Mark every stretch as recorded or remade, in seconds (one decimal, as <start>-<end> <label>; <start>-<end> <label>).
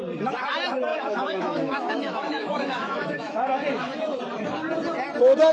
0.0-0.9 recorded; 0.9-4.2 remade; 4.2-5.5 recorded